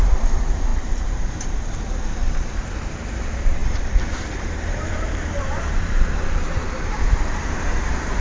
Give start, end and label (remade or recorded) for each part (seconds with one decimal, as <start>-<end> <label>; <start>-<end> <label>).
0.0-8.2 remade